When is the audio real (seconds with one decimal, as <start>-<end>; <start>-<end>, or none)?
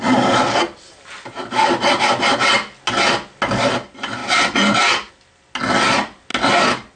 0.0-7.0